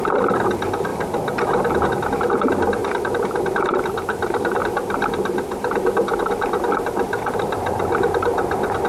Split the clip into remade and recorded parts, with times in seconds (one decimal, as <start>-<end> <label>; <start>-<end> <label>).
0.0-2.8 recorded; 2.8-4.6 remade; 4.6-8.9 recorded